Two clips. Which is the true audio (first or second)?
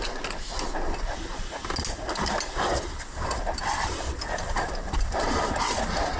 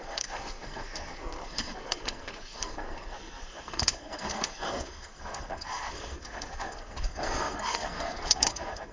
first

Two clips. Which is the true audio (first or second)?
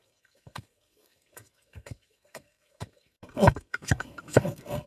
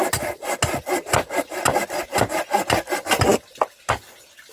second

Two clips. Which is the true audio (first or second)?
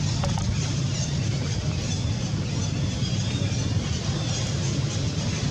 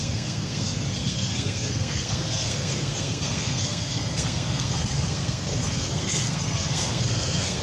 first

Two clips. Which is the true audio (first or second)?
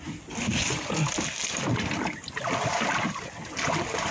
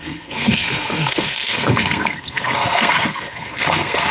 first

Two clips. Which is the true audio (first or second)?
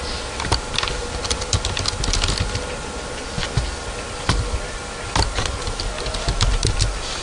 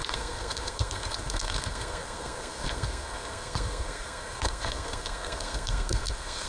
first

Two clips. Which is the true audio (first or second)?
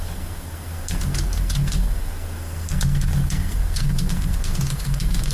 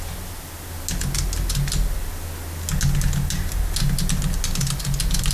second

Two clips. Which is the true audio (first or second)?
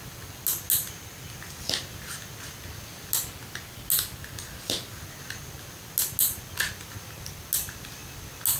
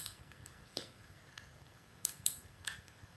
first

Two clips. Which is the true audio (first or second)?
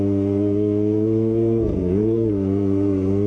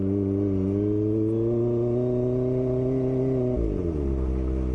second